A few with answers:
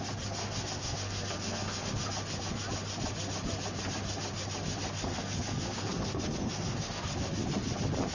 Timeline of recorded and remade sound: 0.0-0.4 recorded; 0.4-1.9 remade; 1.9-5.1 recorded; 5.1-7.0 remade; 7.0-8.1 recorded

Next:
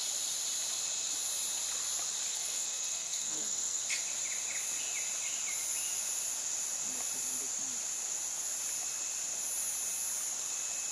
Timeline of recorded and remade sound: 0.0-2.3 recorded; 2.3-3.8 remade; 3.8-10.9 recorded

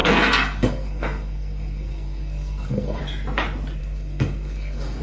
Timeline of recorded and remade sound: 0.0-3.0 remade; 3.0-3.8 recorded; 3.8-5.0 remade

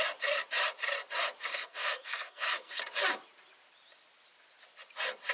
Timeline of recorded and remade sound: 0.0-1.5 recorded; 1.5-2.8 remade; 2.8-5.3 recorded

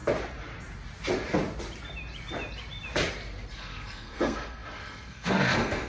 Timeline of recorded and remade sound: 0.0-3.5 recorded; 3.5-5.9 remade

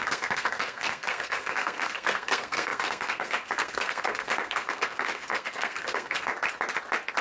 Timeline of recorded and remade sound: 0.0-6.3 remade; 6.3-7.2 recorded